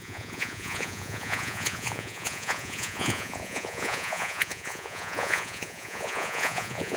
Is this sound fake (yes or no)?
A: yes